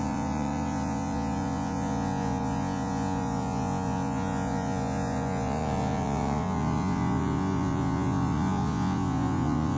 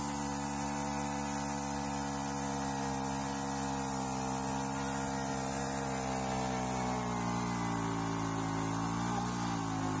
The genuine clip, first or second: second